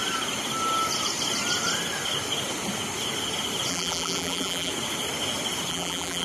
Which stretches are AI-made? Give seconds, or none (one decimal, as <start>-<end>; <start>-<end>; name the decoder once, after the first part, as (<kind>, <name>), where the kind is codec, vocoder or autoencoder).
3.7-4.7 (vocoder, BigVGAN v2); 5.7-6.2